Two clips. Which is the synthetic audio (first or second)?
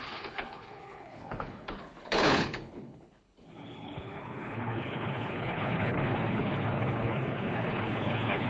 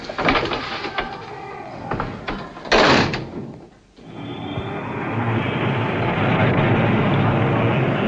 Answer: first